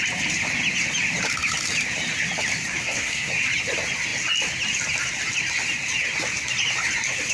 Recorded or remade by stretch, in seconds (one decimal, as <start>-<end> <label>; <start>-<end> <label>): 0.0-2.8 recorded; 2.8-3.3 remade; 3.3-7.3 recorded